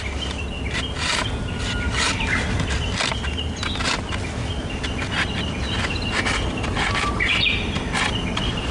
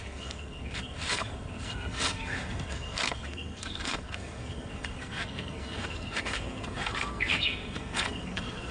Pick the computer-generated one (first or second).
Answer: second